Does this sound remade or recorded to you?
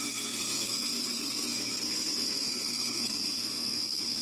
remade